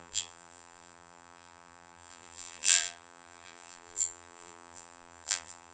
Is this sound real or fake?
fake